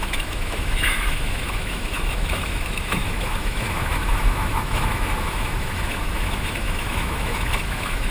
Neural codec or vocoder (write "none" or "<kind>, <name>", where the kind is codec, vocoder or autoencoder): autoencoder, DAC-VAE